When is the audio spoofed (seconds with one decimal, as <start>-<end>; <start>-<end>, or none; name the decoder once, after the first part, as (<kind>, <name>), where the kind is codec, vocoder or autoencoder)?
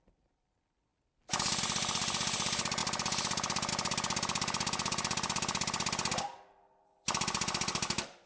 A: none